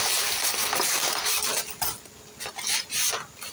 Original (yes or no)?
yes